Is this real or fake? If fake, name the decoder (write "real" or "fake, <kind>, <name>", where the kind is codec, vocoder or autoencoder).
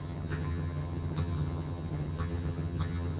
fake, vocoder, HiFi-GAN